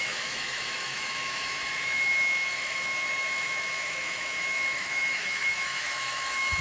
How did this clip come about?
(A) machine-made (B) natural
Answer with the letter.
A